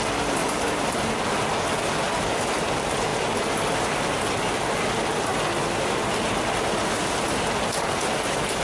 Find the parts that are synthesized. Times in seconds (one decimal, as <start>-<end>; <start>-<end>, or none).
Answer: none